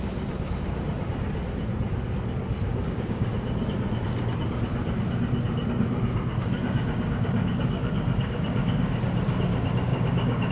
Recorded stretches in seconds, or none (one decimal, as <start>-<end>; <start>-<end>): 0.0-2.7; 3.3-6.4; 9.0-9.9